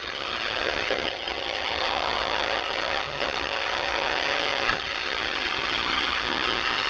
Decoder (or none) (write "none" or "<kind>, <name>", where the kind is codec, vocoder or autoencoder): vocoder, HiFi-GAN